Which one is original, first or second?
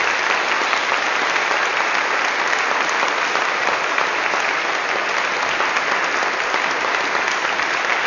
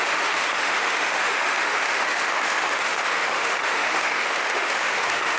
first